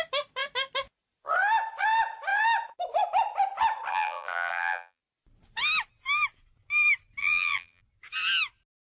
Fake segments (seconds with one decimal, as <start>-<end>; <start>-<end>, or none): 3.9-5.0; 7.2-7.8